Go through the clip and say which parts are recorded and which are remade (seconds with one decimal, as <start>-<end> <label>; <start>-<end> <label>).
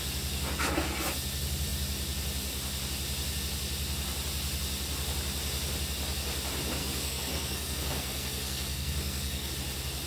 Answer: 0.0-6.8 recorded; 6.8-9.5 remade; 9.5-10.1 recorded